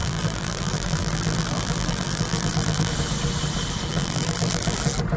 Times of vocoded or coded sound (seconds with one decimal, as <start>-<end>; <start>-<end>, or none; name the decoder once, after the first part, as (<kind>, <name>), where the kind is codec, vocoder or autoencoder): 0.0-2.9 (vocoder, BigVGAN v2); 3.9-4.8